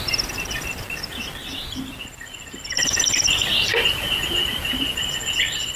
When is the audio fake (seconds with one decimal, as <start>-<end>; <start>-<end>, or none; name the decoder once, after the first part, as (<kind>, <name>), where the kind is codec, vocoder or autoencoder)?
3.7-4.9 (vocoder, BigVGAN v2)